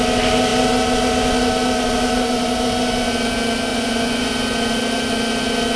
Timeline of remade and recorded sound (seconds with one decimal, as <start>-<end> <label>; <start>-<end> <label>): 0.0-3.7 recorded; 3.7-4.3 remade; 4.3-5.8 recorded